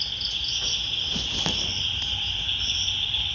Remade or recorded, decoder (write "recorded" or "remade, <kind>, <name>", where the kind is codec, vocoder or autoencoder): recorded